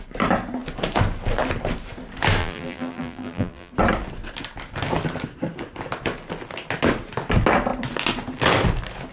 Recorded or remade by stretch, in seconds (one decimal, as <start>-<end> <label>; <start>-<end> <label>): 0.0-2.4 recorded; 2.4-3.7 remade; 3.7-9.1 recorded